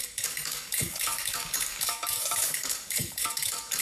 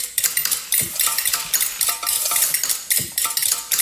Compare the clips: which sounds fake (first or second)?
first